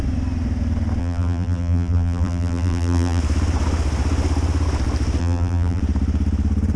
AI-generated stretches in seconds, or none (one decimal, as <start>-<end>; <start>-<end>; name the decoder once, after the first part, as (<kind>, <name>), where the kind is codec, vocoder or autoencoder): 1.0-3.2 (vocoder, BigVGAN v2); 5.2-5.8